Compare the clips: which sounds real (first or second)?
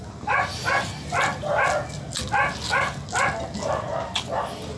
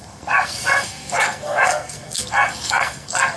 first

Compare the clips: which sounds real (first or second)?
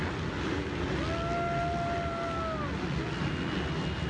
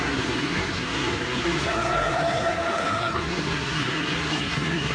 first